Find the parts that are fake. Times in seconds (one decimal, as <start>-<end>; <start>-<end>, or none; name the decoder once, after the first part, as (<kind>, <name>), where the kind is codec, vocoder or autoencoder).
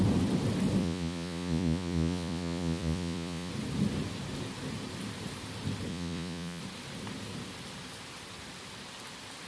0.8-3.5 (vocoder, Vocos); 5.9-6.6